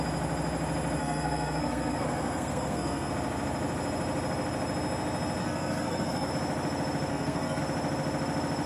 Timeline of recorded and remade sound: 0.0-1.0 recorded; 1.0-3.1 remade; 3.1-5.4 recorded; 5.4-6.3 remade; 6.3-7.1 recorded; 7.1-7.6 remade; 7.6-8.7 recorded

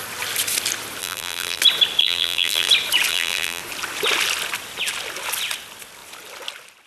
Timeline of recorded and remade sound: 0.0-1.0 recorded; 1.0-1.6 remade; 1.6-2.0 recorded; 2.0-2.7 remade; 2.7-3.1 recorded; 3.1-3.6 remade; 3.6-6.9 recorded

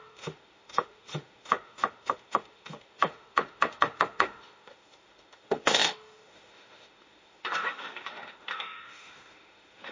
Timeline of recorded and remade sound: 0.0-9.9 remade

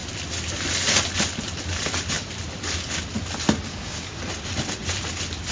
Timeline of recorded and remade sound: 0.0-3.7 recorded; 3.7-4.2 remade; 4.2-5.5 recorded

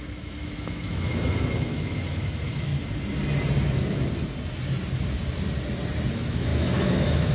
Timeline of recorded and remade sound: 0.0-2.7 remade; 2.7-6.1 recorded; 6.1-7.3 remade

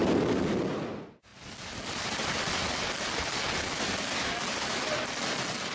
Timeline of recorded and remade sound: 0.0-5.7 recorded

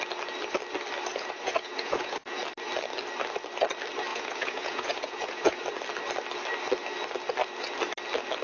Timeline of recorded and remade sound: 0.0-1.1 recorded; 1.1-2.4 remade; 2.4-4.1 recorded; 4.1-5.6 remade; 5.6-8.4 recorded

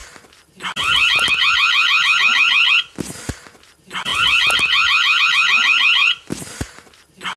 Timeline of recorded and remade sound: 0.0-6.0 recorded; 6.0-6.9 remade; 6.9-7.4 recorded